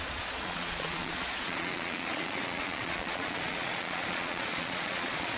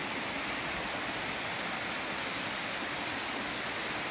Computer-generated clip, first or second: first